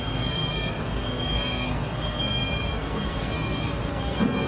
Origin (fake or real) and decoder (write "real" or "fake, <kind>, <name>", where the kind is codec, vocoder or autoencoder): fake, codec, SNAC